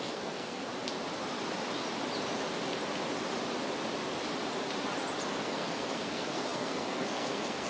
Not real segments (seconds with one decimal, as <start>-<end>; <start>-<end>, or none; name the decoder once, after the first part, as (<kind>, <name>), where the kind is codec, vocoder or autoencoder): 0.0-0.7 (codec, SNAC); 5.3-7.7

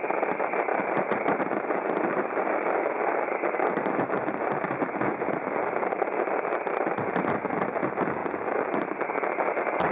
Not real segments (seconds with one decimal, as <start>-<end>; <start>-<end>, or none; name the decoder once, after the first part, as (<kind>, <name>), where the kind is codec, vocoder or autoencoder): 0.7-1.7 (vocoder, BigVGAN v2); 2.1-3.7

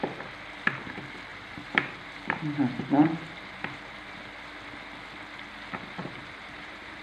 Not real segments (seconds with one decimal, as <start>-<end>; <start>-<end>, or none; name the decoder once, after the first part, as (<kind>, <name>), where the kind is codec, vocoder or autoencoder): 1.3-4.2 (vocoder, BigVGAN v2); 6.0-7.0

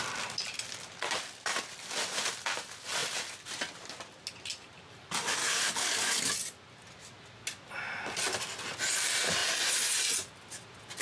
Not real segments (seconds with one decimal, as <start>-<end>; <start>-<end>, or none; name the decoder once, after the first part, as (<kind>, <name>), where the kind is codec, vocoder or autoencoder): 5.4-6.3 (codec, DAC)